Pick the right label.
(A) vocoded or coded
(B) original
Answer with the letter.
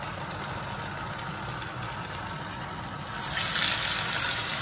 B